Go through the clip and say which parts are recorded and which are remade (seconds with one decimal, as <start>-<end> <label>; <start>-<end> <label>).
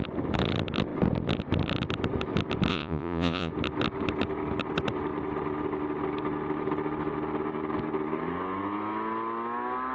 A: 0.0-2.7 recorded; 2.7-3.5 remade; 3.5-9.9 recorded